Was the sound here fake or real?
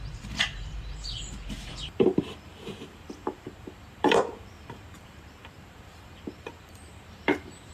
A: fake